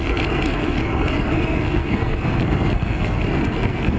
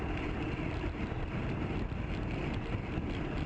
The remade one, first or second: first